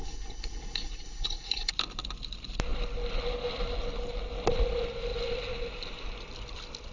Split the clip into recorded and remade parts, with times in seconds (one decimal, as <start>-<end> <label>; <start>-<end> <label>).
0.0-1.7 remade; 1.7-6.9 recorded